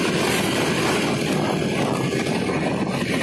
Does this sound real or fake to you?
real